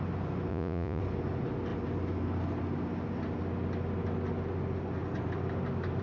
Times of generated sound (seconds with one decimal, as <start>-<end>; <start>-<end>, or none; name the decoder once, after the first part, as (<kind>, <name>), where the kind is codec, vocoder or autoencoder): 0.5-1.0 (vocoder, Vocos)